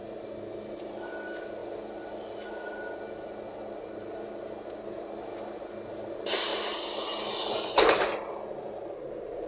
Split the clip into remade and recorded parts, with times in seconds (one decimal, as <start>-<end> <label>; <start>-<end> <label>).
0.0-9.5 recorded